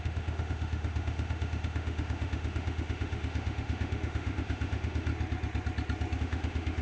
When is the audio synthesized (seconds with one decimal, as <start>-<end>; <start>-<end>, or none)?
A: 0.0-5.1; 6.2-6.8